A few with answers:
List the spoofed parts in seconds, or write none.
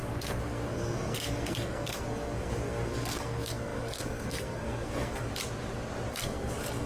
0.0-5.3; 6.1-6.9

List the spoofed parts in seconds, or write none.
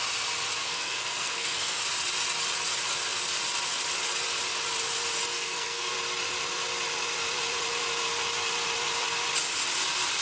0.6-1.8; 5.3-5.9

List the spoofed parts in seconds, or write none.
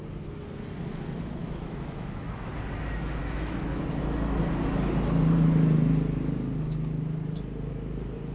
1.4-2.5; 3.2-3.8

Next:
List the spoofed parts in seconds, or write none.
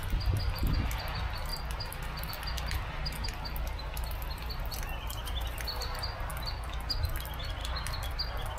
none